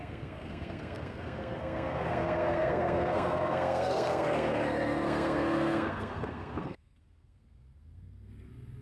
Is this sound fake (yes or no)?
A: yes